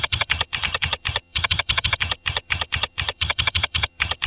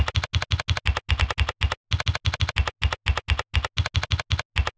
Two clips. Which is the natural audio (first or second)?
second